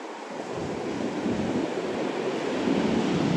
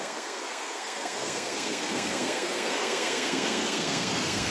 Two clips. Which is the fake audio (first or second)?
second